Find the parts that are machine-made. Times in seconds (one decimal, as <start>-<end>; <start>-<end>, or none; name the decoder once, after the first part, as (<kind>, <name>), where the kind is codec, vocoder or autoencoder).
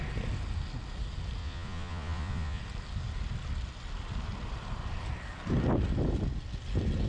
1.4-2.6 (vocoder, Vocos)